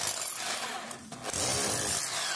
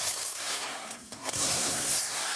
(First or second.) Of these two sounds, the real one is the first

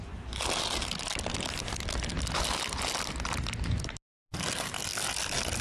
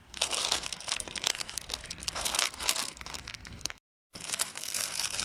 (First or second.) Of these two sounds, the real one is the first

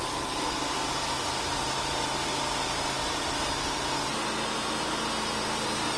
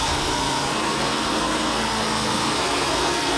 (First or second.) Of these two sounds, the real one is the first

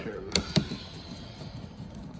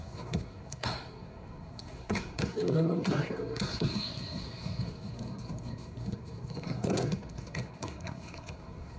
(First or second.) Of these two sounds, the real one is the first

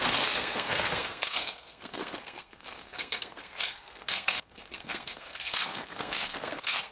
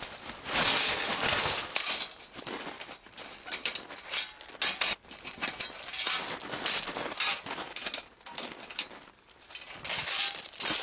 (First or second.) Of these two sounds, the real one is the second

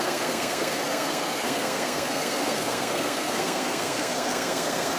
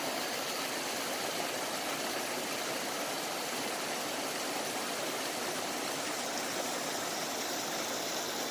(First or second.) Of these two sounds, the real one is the second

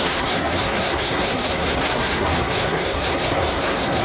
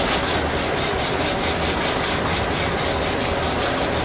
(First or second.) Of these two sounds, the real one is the second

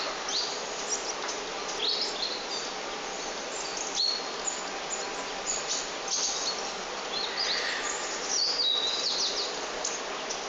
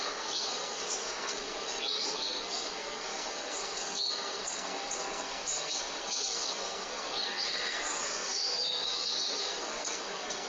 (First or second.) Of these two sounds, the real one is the first